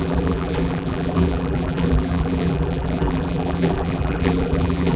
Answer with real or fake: fake